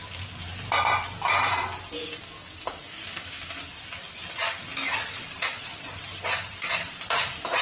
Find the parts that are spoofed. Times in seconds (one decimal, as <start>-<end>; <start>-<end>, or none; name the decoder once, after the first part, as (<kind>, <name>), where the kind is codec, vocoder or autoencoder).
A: 2.0-3.5 (codec, DAC)

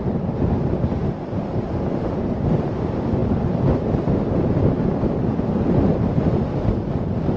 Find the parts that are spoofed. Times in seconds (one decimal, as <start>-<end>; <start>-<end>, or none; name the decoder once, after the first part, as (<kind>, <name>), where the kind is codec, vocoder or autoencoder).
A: none

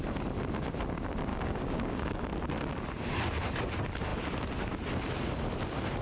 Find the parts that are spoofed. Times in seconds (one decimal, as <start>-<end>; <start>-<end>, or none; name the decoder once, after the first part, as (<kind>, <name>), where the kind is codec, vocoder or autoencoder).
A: 1.3-2.3 (codec, DAC)

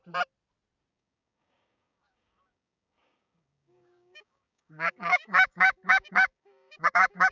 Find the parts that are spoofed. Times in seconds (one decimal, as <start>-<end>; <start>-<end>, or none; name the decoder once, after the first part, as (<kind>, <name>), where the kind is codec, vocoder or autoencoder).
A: 0.9-7.3 (codec, DAC)

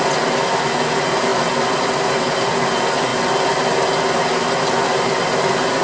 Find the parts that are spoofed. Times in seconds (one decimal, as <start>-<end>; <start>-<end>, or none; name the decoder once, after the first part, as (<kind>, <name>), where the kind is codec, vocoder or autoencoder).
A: none

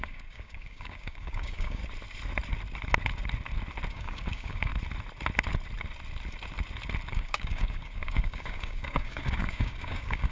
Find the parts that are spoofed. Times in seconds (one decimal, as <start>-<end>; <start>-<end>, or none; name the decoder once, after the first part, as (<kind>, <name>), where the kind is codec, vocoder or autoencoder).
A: 0.0-1.8 (codec, DAC); 3.9-4.7; 7.1-10.3

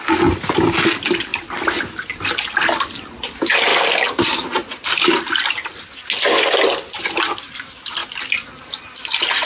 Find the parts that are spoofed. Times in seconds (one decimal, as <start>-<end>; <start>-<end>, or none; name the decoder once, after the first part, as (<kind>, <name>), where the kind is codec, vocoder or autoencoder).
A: none